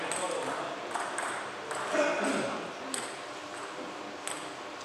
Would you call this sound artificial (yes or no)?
no